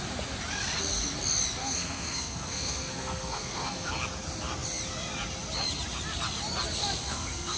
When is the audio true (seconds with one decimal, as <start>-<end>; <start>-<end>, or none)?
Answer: 0.0-1.6; 3.9-6.8